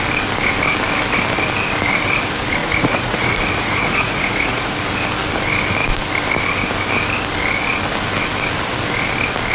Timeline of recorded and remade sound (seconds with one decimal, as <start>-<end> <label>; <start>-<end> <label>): 0.0-2.6 recorded; 2.6-4.7 remade; 4.7-9.5 recorded